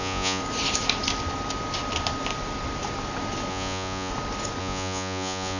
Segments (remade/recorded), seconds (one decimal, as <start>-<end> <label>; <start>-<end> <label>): 0.0-0.4 remade; 0.4-3.5 recorded; 3.5-4.1 remade; 4.1-4.6 recorded; 4.6-5.6 remade